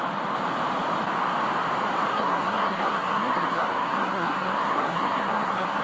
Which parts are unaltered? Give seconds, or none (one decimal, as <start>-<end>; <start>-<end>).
0.0-2.1